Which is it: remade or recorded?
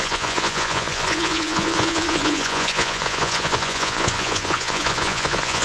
remade